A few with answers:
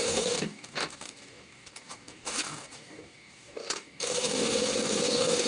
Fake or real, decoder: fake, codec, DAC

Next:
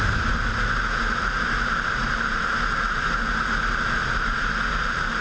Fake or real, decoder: real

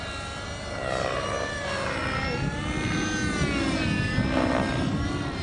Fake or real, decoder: real